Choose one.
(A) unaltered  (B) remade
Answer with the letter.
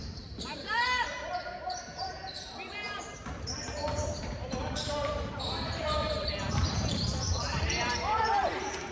B